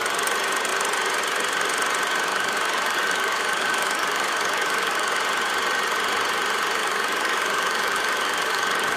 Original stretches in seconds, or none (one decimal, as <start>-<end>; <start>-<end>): 0.0-2.3; 5.2-6.8